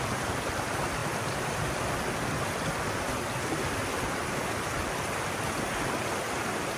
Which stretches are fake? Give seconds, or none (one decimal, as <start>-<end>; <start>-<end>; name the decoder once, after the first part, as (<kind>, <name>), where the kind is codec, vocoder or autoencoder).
none